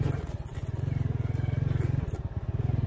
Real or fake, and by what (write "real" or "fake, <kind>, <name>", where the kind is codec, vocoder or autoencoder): real